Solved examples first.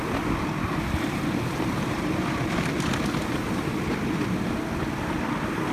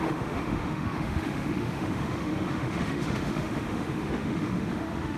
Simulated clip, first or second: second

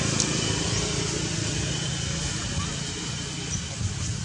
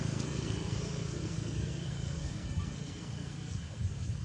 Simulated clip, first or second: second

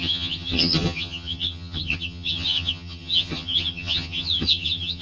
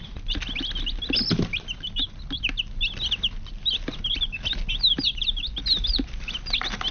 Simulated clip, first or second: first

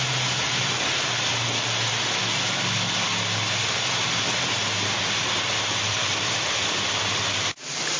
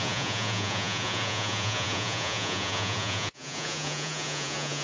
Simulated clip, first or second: second